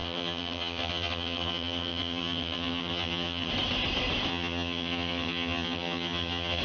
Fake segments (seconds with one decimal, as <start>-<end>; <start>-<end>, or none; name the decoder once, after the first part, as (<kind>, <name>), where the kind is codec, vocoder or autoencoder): 0.0-3.5 (vocoder, HiFi-GAN); 4.3-6.6